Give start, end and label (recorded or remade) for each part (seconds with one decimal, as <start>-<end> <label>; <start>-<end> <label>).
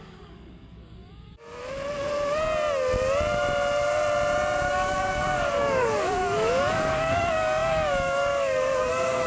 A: 0.0-1.6 remade; 1.6-4.7 recorded; 4.7-9.3 remade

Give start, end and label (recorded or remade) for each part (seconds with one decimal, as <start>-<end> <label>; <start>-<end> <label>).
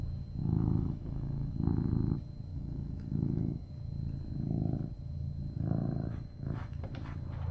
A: 0.0-0.4 recorded; 0.4-1.5 remade; 1.5-2.5 recorded; 2.5-3.7 remade; 3.7-5.8 recorded; 5.8-6.8 remade; 6.8-7.5 recorded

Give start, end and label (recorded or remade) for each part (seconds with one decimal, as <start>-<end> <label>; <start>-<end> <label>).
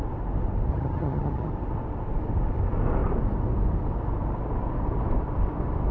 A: 0.0-0.7 recorded; 0.7-1.5 remade; 1.5-5.9 recorded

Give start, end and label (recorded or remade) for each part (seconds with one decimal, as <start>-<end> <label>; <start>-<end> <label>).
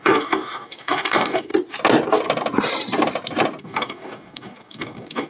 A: 0.0-1.5 remade; 1.5-3.6 recorded; 3.6-5.3 remade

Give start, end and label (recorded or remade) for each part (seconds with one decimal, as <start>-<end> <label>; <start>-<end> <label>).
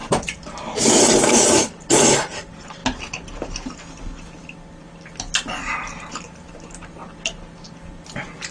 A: 0.0-2.8 remade; 2.8-6.5 recorded; 6.5-7.0 remade; 7.0-8.5 recorded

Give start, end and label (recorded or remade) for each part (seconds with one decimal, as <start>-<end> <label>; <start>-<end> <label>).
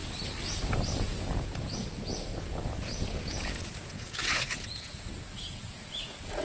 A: 0.0-0.6 recorded; 0.6-6.4 remade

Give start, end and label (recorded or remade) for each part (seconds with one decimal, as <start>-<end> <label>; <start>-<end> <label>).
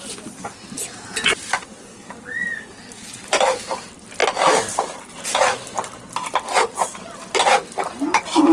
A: 0.0-8.5 recorded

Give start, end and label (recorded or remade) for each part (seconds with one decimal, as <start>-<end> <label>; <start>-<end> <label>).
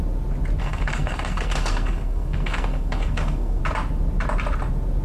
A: 0.0-0.6 recorded; 0.6-3.6 remade; 3.6-5.0 recorded